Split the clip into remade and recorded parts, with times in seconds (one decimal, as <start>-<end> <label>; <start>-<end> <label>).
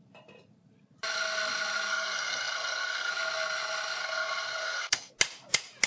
0.0-1.9 recorded; 1.9-3.1 remade; 3.1-4.0 recorded; 4.0-5.1 remade; 5.1-5.9 recorded